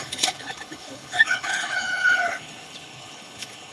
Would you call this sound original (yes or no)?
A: no